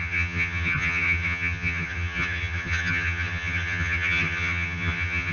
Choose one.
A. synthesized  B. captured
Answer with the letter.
A